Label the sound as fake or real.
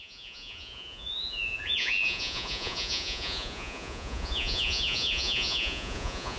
fake